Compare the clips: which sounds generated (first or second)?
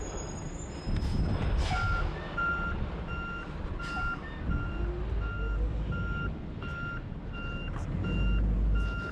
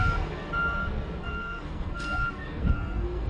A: second